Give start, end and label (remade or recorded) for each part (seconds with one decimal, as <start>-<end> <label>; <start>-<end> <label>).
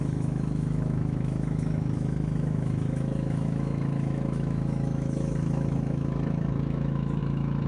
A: 0.0-7.7 remade